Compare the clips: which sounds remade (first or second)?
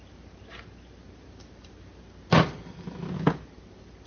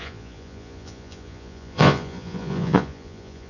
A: second